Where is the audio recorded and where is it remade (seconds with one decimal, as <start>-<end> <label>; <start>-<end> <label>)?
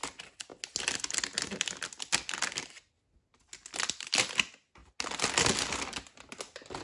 0.0-6.8 recorded